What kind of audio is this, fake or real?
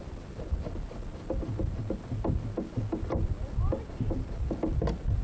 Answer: real